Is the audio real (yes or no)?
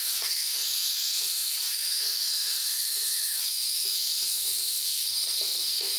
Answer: no